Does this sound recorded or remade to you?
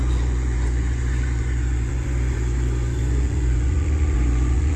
remade